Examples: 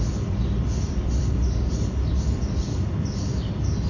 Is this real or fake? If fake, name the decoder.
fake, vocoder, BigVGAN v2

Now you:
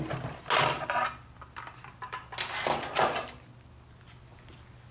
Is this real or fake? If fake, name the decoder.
real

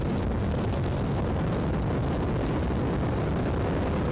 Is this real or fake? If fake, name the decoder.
real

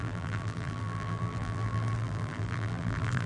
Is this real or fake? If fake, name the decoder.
fake, vocoder, BigVGAN v2